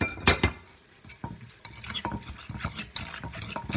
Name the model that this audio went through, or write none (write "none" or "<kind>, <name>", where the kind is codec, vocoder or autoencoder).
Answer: none